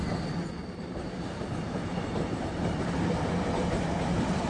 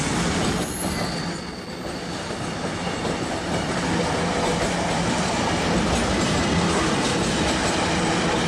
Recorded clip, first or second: second